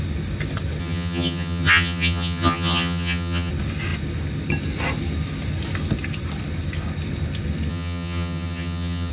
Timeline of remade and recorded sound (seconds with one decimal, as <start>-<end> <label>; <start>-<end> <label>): 0.0-0.8 recorded; 0.8-3.5 remade; 3.5-7.7 recorded; 7.7-9.1 remade